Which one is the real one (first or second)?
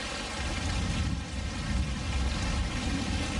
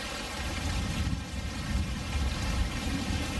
first